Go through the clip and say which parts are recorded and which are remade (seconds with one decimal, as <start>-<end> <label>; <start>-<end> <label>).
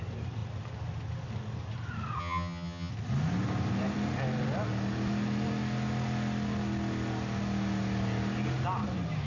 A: 0.0-2.2 recorded; 2.2-2.9 remade; 2.9-9.3 recorded